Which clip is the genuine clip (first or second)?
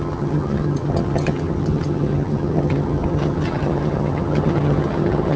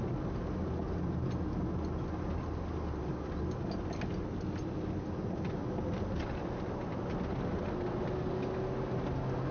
second